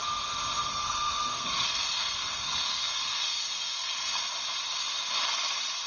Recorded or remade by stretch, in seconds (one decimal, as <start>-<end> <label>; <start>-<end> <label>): 0.0-0.7 recorded; 0.7-4.2 remade; 4.2-5.9 recorded